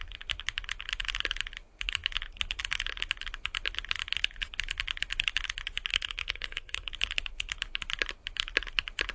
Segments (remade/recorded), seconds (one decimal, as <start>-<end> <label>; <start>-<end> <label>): 0.0-5.9 recorded; 5.9-6.9 remade; 6.9-9.1 recorded

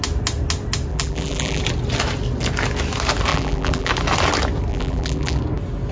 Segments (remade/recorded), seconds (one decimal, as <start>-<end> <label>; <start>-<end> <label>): 0.0-0.9 recorded; 0.9-1.6 remade; 1.6-3.3 recorded; 3.3-3.9 remade; 3.9-4.7 recorded; 4.7-5.4 remade; 5.4-5.9 recorded

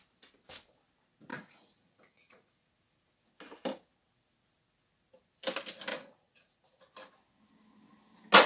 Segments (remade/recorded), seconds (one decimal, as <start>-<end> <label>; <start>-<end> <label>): 0.0-1.3 recorded; 1.3-2.7 remade; 2.7-5.9 recorded; 5.9-6.8 remade; 6.8-8.5 recorded

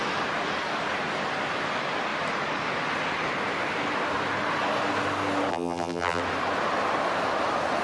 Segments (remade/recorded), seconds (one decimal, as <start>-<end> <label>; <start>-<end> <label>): 0.0-5.5 recorded; 5.5-6.2 remade; 6.2-7.8 recorded

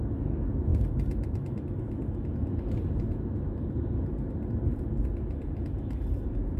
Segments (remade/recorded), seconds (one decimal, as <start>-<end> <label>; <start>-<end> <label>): 0.0-6.6 recorded

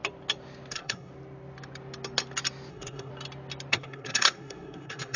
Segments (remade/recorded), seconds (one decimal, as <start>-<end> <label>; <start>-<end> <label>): 0.0-0.7 recorded; 0.7-1.1 remade; 1.1-2.7 recorded; 2.7-3.1 remade; 3.1-3.7 recorded; 3.7-5.2 remade